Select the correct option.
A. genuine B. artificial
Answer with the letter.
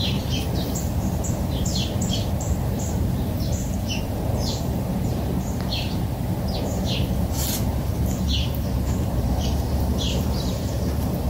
B